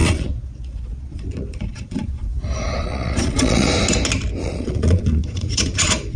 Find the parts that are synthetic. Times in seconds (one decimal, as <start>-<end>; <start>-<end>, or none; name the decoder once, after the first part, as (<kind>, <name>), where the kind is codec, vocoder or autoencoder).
0.0-3.7 (vocoder, Vocos); 4.4-6.2